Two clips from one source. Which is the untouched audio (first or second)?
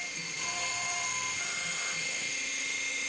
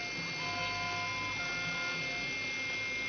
second